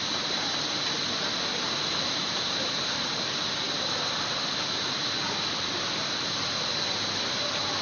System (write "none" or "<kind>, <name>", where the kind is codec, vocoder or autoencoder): none